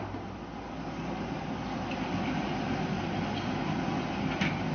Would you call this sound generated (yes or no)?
no